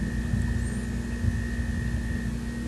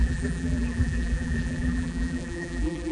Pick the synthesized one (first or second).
second